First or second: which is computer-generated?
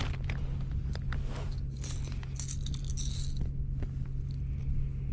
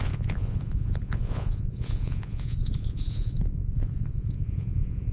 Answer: second